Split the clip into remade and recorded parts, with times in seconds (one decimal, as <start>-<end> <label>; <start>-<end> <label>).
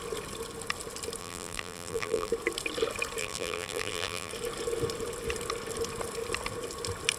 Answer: 0.0-1.2 recorded; 1.2-2.3 remade; 2.3-3.2 recorded; 3.2-4.3 remade; 4.3-7.2 recorded